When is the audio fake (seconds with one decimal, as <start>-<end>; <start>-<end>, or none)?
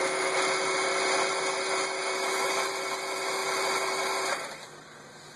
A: 2.0-2.7